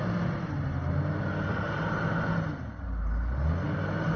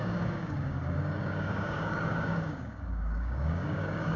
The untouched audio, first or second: first